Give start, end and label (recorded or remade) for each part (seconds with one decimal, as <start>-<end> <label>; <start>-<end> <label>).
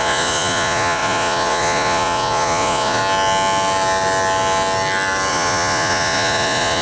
0.0-3.0 remade; 3.0-5.3 recorded; 5.3-6.8 remade